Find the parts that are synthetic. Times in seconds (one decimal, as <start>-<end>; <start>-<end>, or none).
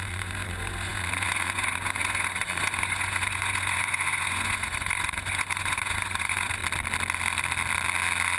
0.0-6.6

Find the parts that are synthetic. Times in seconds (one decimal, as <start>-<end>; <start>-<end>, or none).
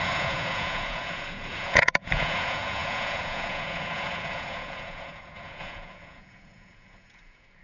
0.0-7.6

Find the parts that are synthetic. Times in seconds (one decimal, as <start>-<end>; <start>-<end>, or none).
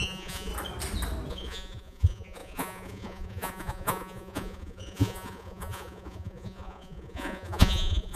0.0-0.5; 1.3-8.2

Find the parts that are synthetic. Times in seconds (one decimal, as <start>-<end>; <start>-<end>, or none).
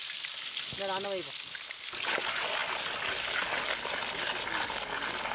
none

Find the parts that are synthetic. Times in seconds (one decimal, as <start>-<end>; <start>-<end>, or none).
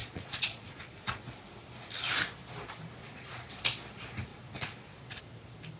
0.0-1.3; 3.0-3.6; 4.3-5.2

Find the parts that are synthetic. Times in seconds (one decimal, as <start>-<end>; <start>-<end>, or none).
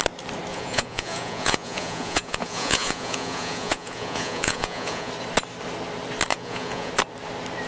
0.5-5.1; 6.3-6.9